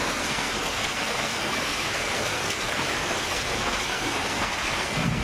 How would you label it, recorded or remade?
remade